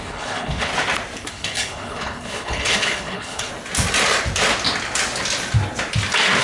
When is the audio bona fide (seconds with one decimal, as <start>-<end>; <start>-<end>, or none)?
0.7-1.3; 3.5-6.4